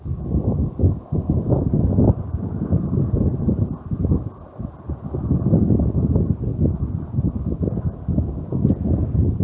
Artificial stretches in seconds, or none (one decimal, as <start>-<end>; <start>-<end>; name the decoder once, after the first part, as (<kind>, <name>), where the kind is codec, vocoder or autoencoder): 2.3-4.1 (vocoder, BigVGAN v2)